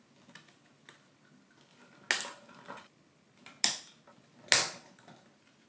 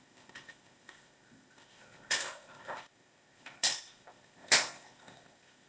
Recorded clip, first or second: first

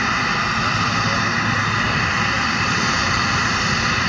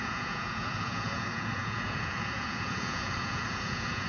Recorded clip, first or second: first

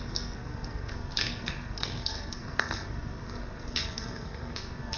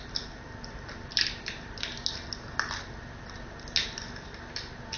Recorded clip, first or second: second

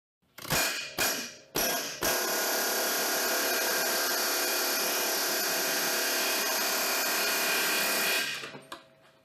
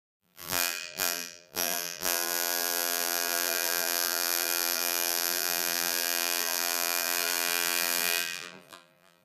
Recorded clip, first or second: first